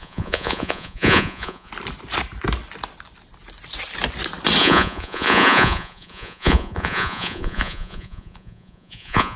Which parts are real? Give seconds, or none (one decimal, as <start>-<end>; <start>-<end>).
1.7-4.6